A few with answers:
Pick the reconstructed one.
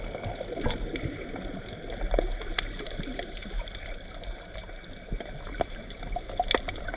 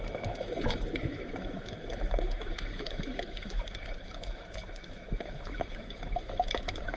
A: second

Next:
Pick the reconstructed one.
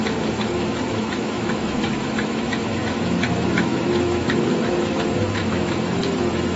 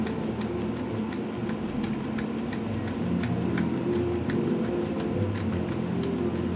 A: first